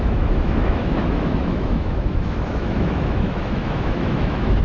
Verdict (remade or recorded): remade